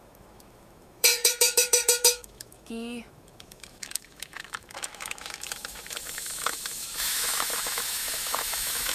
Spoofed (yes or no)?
yes